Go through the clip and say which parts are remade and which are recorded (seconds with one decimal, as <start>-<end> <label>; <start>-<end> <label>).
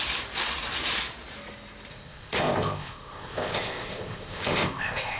0.0-1.9 recorded; 1.9-5.2 remade